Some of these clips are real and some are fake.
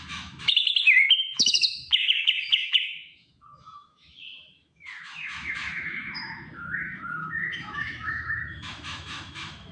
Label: fake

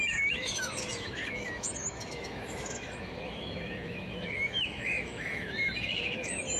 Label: fake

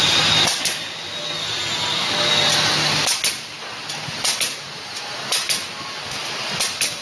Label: real